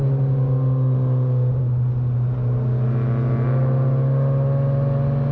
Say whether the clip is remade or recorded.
recorded